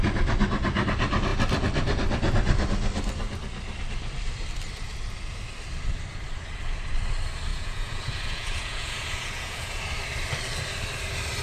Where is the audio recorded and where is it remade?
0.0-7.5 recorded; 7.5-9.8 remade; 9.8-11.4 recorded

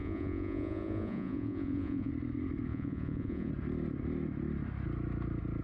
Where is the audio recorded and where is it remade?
0.0-2.1 remade; 2.1-2.7 recorded; 2.7-3.5 remade; 3.5-5.6 recorded

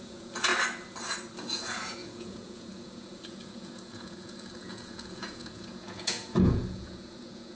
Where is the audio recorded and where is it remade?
0.0-0.5 remade; 0.5-1.4 recorded; 1.4-7.6 remade